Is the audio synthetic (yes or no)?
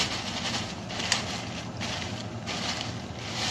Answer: no